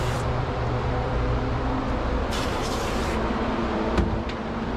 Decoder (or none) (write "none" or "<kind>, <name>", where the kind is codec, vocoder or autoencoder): vocoder, BigVGAN v2